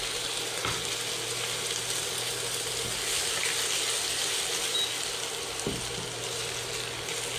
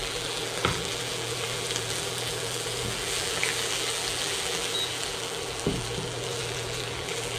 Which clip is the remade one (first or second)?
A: second